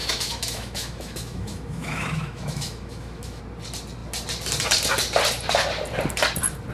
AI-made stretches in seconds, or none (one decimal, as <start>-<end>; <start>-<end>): 0.0-3.4